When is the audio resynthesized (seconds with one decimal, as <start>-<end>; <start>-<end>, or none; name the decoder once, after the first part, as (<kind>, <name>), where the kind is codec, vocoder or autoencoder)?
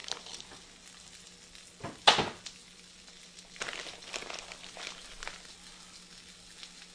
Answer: none